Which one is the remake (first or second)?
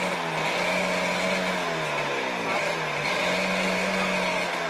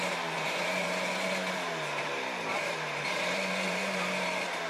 second